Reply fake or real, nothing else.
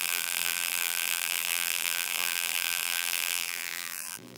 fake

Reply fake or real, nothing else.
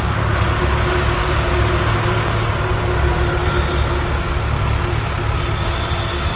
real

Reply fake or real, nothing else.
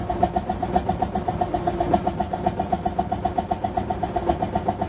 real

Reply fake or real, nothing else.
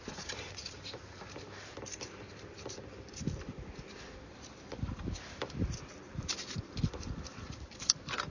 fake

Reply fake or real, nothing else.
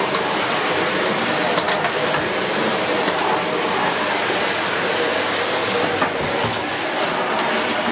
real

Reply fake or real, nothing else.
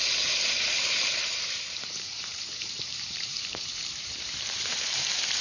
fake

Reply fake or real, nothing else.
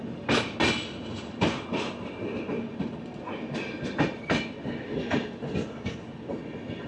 real